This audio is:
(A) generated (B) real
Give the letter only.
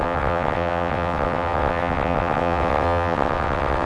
A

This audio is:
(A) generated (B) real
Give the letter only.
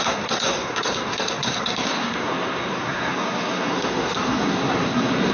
A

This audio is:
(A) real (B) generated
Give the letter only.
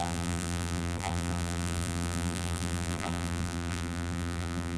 B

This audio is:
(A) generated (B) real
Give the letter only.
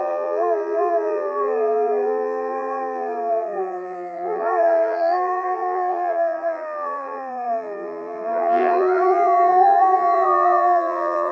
A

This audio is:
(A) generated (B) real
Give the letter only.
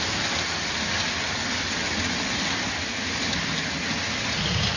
B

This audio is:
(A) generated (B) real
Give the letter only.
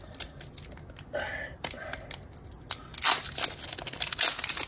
B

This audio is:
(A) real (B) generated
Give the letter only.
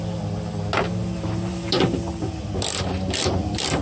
A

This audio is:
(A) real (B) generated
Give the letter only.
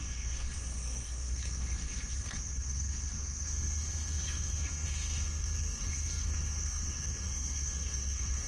B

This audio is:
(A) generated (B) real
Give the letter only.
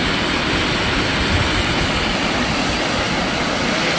B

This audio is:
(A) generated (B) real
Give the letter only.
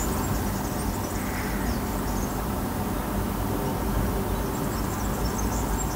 B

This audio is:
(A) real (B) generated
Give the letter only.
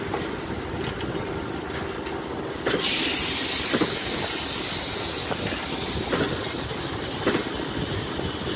A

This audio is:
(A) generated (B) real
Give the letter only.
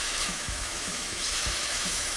A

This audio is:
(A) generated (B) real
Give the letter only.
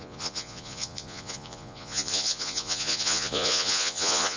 A